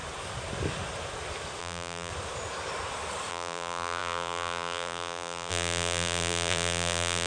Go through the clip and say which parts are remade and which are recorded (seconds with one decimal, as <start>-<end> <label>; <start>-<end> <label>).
0.0-1.6 recorded; 1.6-2.1 remade; 2.1-3.3 recorded; 3.3-7.3 remade